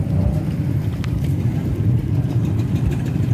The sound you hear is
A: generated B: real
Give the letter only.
A